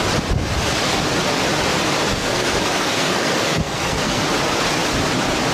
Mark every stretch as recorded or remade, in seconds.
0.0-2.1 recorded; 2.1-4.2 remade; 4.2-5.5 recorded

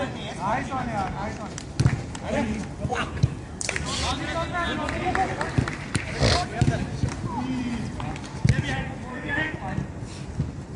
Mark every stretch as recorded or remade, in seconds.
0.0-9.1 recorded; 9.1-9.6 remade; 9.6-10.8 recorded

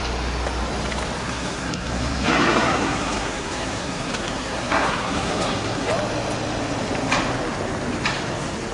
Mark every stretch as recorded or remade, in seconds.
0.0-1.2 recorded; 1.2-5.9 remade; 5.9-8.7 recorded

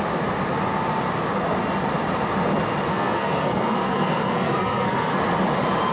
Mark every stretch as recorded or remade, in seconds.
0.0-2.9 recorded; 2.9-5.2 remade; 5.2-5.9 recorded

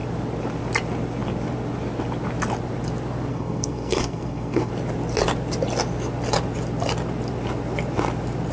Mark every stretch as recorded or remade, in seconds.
0.0-3.3 recorded; 3.3-4.7 remade; 4.7-8.5 recorded

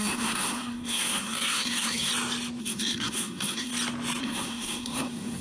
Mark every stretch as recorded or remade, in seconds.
0.0-2.1 remade; 2.1-2.6 recorded; 2.6-3.7 remade; 3.7-4.2 recorded; 4.2-5.4 remade

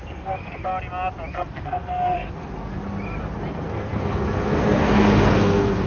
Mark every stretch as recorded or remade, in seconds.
0.0-0.7 remade; 0.7-1.3 recorded; 1.3-2.4 remade; 2.4-3.5 recorded; 3.5-5.9 remade